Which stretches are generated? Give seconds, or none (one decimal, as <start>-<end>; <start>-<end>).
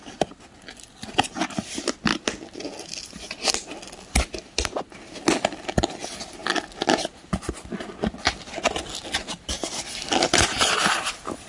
none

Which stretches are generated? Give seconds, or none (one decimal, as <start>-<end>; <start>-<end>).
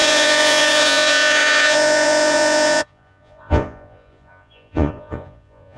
0.0-5.8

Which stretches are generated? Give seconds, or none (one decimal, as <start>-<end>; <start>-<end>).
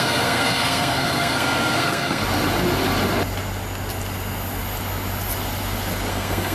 0.0-2.2; 6.1-6.5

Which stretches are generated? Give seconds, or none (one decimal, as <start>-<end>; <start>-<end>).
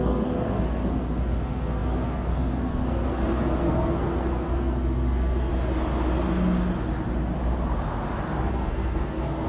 0.0-5.5; 8.5-9.5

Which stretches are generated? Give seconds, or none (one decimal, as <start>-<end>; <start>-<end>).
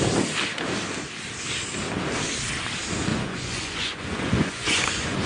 3.1-5.3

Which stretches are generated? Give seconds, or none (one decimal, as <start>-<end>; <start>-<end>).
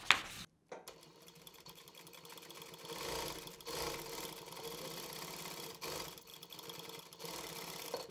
1.1-2.1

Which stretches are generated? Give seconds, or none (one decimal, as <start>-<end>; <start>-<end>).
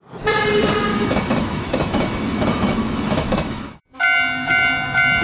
0.9-4.0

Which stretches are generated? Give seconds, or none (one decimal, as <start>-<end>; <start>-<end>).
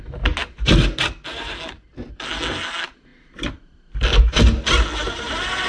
none